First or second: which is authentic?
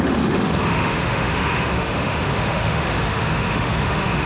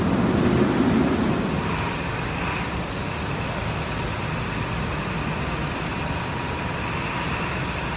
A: second